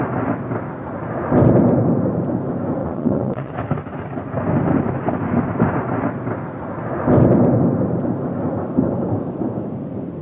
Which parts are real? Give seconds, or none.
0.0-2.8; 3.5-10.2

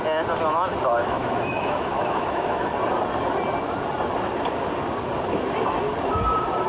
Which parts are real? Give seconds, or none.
0.0-1.0; 2.7-6.7

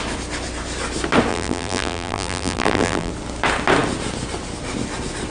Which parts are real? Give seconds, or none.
0.0-1.3; 3.1-5.3

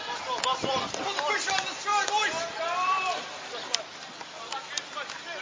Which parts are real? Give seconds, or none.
0.0-5.4

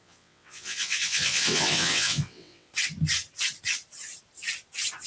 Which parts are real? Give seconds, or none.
2.7-5.1